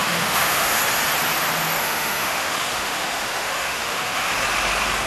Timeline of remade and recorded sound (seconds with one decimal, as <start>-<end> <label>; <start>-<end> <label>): 0.0-0.8 remade; 0.8-1.8 recorded; 1.8-4.3 remade; 4.3-5.1 recorded